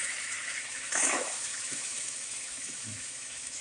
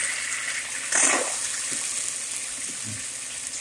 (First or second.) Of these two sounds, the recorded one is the second